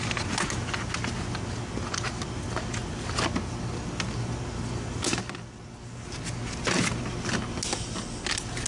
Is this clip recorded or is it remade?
recorded